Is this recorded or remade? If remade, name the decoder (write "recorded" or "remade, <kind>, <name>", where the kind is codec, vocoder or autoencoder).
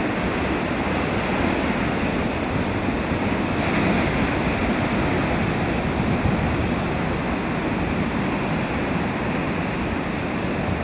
recorded